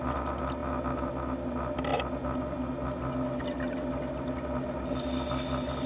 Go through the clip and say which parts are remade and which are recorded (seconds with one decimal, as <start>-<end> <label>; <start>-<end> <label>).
0.0-5.9 recorded